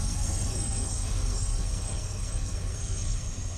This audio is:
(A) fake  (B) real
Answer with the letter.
A